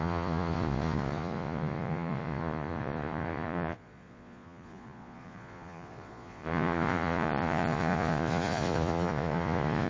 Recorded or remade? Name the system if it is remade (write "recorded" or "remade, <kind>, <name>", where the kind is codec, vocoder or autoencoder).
remade, vocoder, Vocos